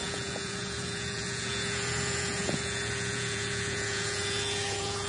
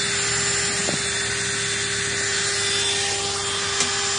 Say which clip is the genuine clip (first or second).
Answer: second